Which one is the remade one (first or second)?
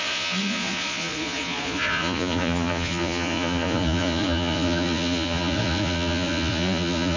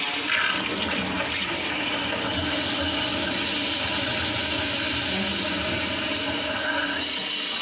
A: first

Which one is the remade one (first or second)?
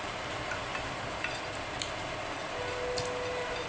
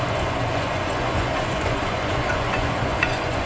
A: second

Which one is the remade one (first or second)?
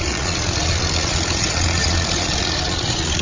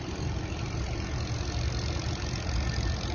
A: first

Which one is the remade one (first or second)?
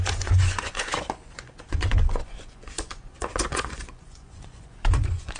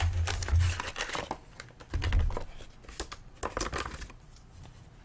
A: first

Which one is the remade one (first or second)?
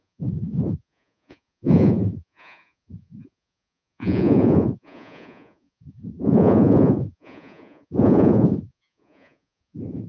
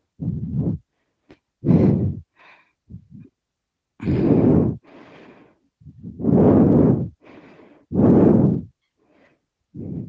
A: first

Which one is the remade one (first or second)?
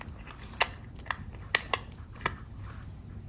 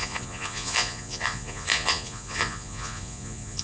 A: second